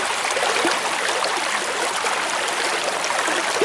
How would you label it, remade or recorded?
recorded